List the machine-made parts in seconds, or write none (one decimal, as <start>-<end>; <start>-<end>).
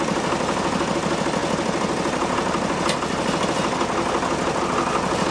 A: none